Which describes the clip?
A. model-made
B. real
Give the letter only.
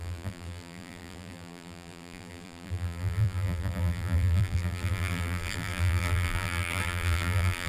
A